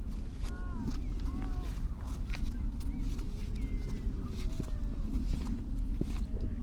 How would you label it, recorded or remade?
recorded